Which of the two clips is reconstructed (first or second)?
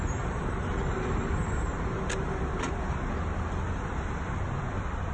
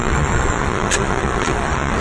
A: second